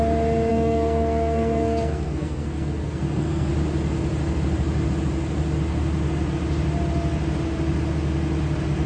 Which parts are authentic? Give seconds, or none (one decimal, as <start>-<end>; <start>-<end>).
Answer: 0.0-0.5; 3.5-8.9